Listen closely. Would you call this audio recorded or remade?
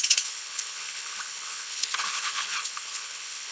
remade